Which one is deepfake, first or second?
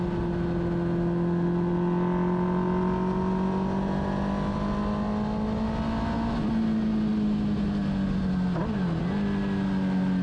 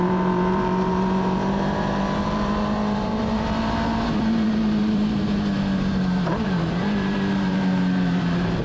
second